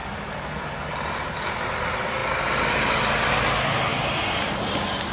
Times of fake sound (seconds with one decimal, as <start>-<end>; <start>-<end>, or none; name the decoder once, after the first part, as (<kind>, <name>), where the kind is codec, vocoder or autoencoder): none